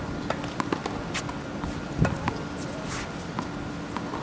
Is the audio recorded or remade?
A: recorded